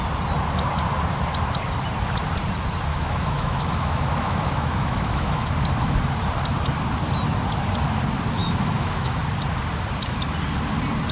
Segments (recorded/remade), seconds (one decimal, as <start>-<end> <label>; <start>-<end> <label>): 0.0-2.9 recorded; 2.9-5.5 remade; 5.5-8.4 recorded; 8.4-9.2 remade; 9.2-11.1 recorded